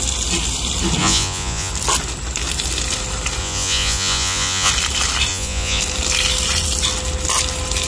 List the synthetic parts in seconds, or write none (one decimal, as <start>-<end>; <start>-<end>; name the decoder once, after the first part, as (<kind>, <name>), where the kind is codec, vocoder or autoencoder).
1.0-1.7 (vocoder, Vocos); 3.4-4.7; 5.3-5.8